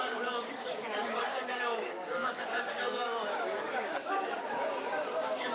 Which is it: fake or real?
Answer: fake